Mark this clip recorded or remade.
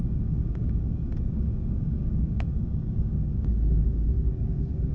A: remade